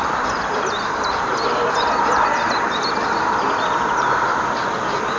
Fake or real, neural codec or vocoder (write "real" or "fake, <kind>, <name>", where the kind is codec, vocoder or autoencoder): real